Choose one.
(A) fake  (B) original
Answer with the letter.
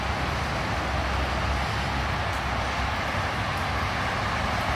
B